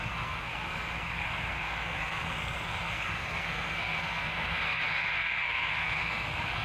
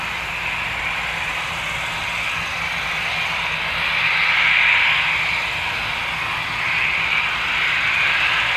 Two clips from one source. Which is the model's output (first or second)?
first